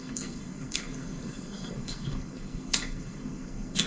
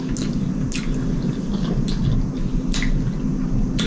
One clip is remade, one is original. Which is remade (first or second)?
first